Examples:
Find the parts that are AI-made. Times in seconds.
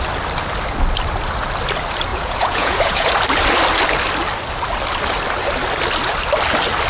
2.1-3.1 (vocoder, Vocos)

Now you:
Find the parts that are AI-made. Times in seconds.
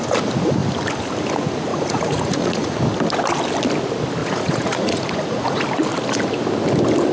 1.7-2.8 (vocoder, Vocos); 4.2-5.6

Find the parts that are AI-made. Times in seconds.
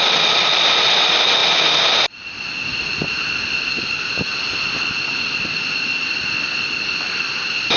none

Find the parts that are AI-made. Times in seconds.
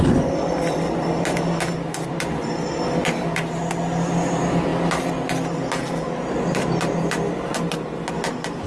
none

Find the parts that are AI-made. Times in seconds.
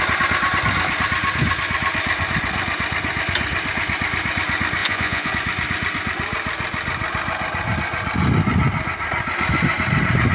4.8-5.3 (vocoder, Vocos)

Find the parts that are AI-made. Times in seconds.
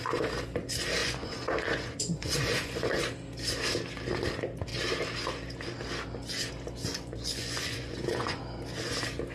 1.0-3.0 (vocoder, Vocos); 6.9-8.4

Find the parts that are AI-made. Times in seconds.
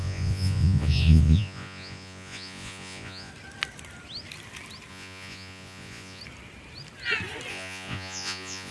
0.0-3.3 (vocoder, Vocos); 4.9-6.2; 7.5-8.7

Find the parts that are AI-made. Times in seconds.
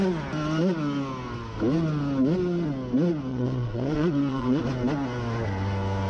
3.3-4.6 (vocoder, Vocos)